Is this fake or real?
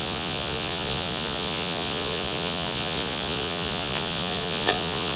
fake